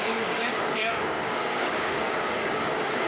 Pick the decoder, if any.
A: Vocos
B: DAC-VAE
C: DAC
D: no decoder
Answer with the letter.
C